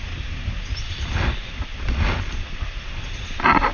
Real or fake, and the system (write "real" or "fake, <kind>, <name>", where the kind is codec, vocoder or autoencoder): real